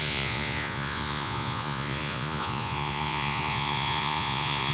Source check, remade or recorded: remade